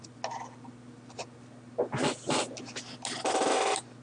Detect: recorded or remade recorded